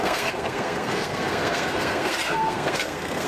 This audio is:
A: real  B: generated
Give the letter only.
B